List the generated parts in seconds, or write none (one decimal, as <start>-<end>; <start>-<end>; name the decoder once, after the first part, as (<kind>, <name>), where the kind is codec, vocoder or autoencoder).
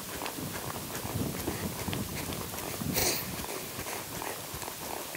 none